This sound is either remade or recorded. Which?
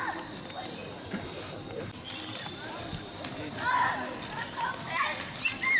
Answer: recorded